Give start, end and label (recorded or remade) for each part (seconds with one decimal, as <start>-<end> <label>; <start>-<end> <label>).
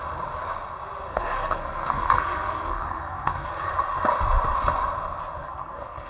0.0-1.1 recorded; 1.1-3.5 remade; 3.5-5.4 recorded; 5.4-6.1 remade